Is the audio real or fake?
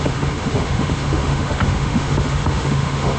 fake